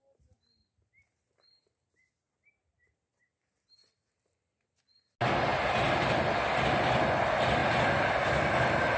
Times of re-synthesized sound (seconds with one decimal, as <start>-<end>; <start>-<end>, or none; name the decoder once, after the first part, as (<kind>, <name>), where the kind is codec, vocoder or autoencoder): none